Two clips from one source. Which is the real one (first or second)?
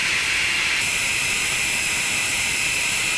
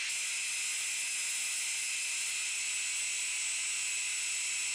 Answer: second